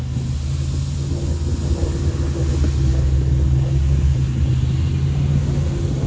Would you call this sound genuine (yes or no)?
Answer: yes